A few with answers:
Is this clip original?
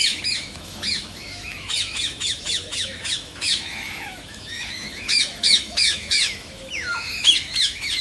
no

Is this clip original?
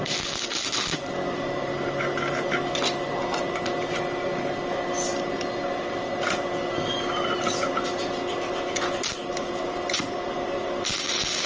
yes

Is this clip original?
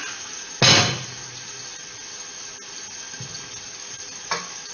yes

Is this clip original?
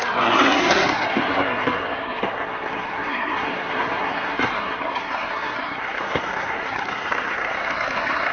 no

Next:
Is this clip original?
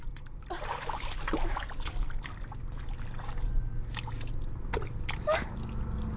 yes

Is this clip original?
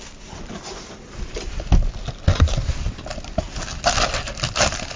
yes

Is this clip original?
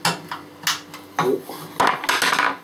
yes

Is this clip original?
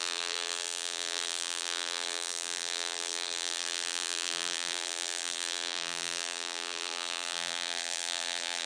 no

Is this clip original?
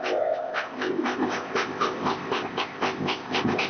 no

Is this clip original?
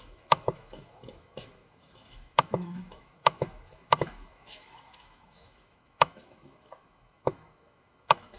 no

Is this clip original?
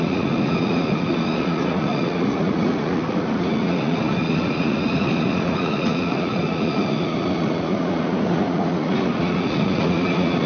no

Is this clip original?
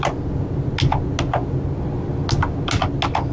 yes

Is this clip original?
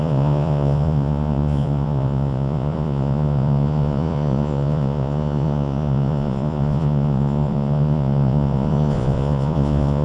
no